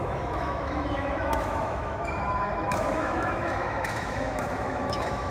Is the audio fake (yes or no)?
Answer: yes